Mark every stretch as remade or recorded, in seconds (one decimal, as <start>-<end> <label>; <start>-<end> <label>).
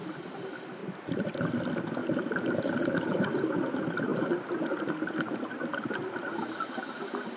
0.0-0.8 recorded; 0.8-1.5 remade; 1.5-2.0 recorded; 2.0-3.3 remade; 3.3-7.4 recorded